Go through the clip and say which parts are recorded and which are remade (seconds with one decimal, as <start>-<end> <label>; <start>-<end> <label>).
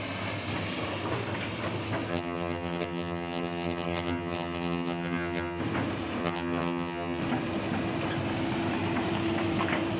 0.0-2.1 recorded; 2.1-5.6 remade; 5.6-6.2 recorded; 6.2-7.2 remade; 7.2-10.0 recorded